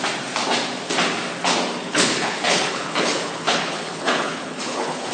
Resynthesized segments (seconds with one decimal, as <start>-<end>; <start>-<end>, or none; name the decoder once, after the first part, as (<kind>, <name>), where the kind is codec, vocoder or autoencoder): 1.8-5.1 (codec, HILCodec)